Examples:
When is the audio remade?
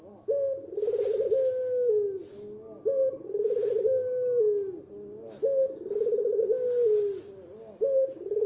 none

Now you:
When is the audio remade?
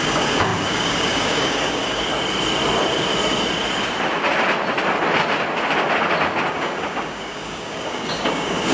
0.0-2.1 (codec, DAC); 6.5-8.7